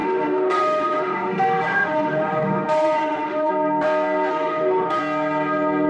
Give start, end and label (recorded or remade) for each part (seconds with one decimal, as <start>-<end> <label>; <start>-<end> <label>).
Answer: 0.0-3.5 remade; 3.5-4.3 recorded; 4.3-5.0 remade; 5.0-5.9 recorded